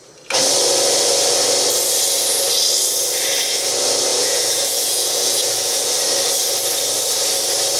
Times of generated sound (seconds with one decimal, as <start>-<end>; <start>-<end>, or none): 4.1-5.9